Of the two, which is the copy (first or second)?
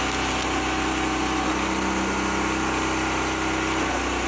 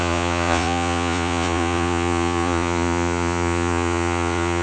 second